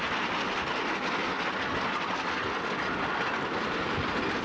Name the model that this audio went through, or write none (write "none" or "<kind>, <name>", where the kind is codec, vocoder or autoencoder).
none